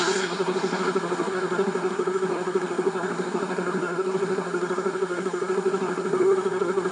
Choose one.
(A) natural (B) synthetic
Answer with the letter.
B